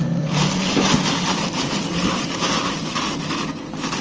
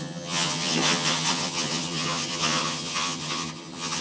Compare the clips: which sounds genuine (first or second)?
first